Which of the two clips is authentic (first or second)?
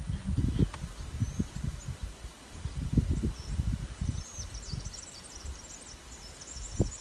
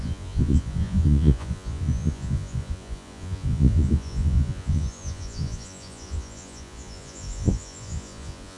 first